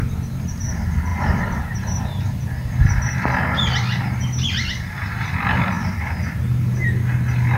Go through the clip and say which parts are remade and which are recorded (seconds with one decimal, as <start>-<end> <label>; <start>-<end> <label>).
0.0-1.1 recorded; 1.1-5.7 remade; 5.7-7.6 recorded